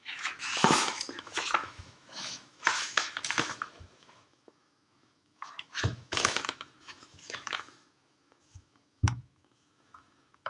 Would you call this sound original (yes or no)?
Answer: no